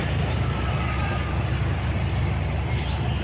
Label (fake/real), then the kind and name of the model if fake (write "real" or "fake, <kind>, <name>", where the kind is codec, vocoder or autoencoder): real